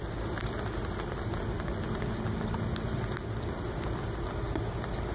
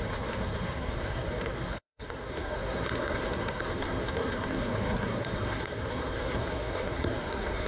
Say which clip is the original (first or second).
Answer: first